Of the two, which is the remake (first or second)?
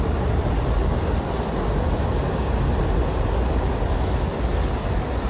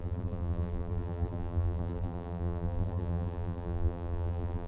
second